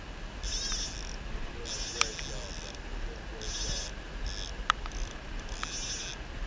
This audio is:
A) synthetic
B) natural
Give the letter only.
B